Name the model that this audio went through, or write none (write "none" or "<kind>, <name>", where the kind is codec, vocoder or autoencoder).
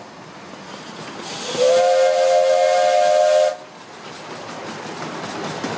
none